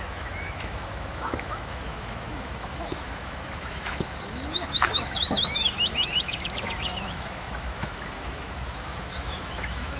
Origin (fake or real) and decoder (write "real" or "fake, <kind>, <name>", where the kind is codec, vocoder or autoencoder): fake, autoencoder, DAC-VAE